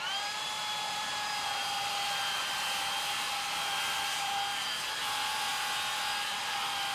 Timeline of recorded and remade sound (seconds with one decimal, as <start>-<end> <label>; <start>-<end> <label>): 0.0-5.5 remade; 5.5-6.3 recorded; 6.3-6.9 remade

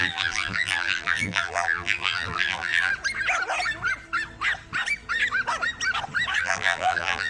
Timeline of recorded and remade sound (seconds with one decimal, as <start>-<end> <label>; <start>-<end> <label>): 0.0-2.9 remade; 2.9-6.4 recorded; 6.4-7.3 remade

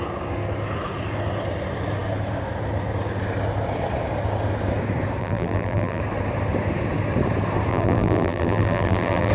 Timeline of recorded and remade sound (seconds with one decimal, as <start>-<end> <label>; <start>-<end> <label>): 0.0-5.2 recorded; 5.2-6.0 remade; 6.0-7.7 recorded; 7.7-9.3 remade